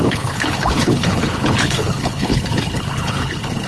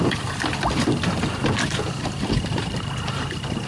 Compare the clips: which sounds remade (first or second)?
first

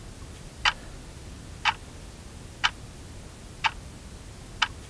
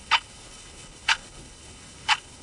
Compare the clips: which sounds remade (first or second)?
second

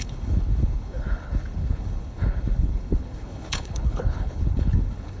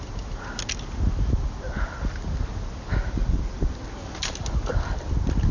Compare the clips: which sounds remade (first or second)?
first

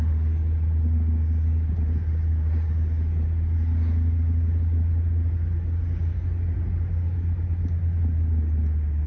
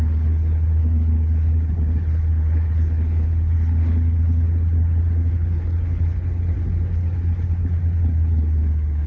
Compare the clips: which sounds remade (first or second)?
second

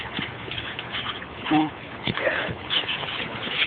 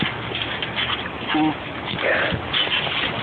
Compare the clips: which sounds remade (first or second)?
first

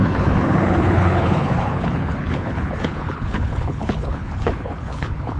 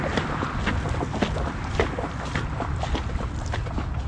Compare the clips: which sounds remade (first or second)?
first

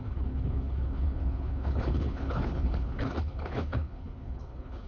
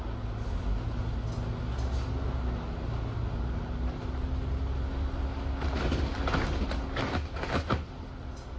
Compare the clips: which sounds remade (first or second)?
first